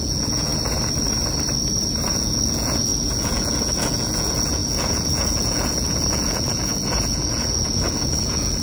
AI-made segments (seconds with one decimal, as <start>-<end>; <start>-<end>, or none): 0.0-0.5; 2.1-8.6